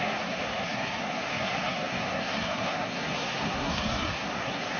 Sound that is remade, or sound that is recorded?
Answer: remade